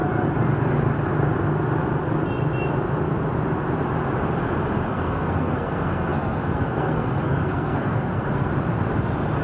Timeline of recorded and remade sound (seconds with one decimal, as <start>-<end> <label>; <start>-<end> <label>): 0.0-4.9 recorded; 4.9-8.5 remade; 8.5-9.4 recorded